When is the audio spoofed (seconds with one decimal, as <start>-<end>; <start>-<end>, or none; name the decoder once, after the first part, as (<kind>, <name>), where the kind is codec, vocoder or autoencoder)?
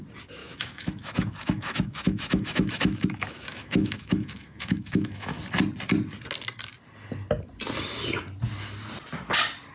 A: 0.4-5.4 (autoencoder, DAC-VAE)